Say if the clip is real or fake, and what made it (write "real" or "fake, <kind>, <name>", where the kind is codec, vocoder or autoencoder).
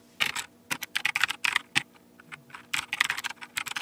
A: real